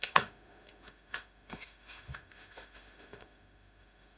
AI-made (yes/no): yes